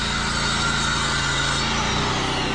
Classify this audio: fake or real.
real